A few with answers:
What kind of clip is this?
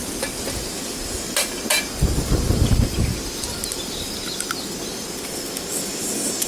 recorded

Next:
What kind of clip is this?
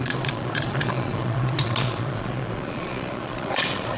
remade